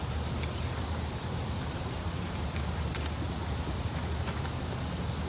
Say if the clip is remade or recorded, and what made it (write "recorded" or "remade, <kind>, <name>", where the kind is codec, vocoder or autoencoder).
recorded